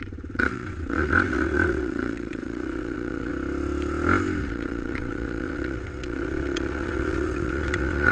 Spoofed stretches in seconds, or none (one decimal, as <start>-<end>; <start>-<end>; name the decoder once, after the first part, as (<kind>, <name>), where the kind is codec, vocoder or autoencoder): 0.0-3.3 (vocoder, WaveNeXt); 4.4-8.1